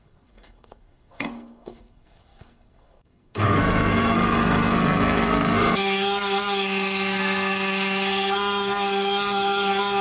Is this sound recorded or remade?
remade